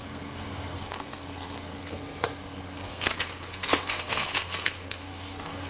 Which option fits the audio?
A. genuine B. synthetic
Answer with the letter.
B